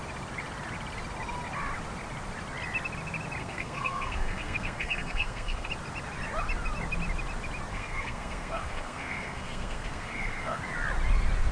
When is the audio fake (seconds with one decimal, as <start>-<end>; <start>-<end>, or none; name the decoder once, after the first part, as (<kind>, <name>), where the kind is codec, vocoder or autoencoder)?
3.4-5.7 (codec, SNAC); 7.7-10.6